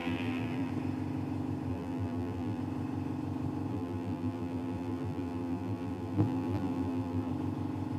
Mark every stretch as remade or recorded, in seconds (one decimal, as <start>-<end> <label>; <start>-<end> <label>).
0.0-0.7 remade; 0.7-1.7 recorded; 1.7-2.6 remade; 2.6-3.7 recorded; 3.7-7.3 remade; 7.3-8.0 recorded